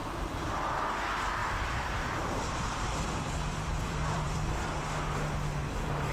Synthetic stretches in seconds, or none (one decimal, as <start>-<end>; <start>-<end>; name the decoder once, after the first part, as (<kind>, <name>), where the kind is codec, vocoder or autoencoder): 0.0-0.8 (vocoder, BigVGAN v2); 1.4-4.8